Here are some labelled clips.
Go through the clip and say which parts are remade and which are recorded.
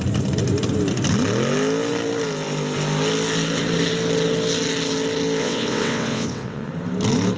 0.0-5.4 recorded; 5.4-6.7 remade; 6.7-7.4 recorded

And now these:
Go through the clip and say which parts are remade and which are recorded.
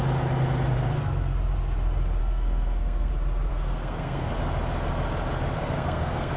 0.0-2.2 recorded; 2.2-3.1 remade; 3.1-3.5 recorded; 3.5-4.3 remade; 4.3-5.6 recorded; 5.6-6.4 remade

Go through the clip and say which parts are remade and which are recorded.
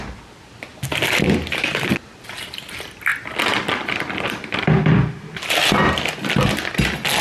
0.0-0.7 recorded; 0.7-1.9 remade; 1.9-7.2 recorded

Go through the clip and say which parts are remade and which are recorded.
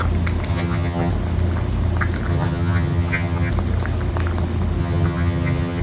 0.0-0.5 recorded; 0.5-1.1 remade; 1.1-2.3 recorded; 2.3-3.5 remade; 3.5-4.8 recorded; 4.8-5.8 remade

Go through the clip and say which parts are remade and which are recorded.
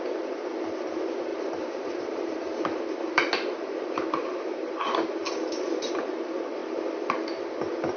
0.0-1.3 recorded; 1.3-5.9 remade; 5.9-8.0 recorded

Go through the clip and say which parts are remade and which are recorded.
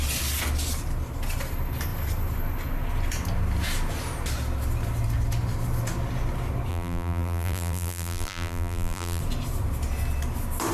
0.0-6.7 recorded; 6.7-9.2 remade; 9.2-10.7 recorded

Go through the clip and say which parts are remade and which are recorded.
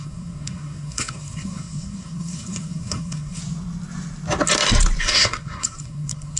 0.0-3.4 remade; 3.4-5.0 recorded; 5.0-6.4 remade